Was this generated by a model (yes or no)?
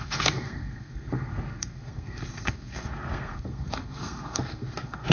yes